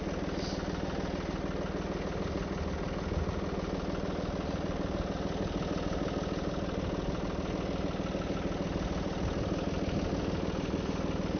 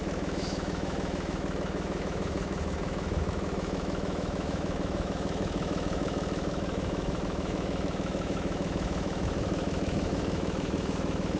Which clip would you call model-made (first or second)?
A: second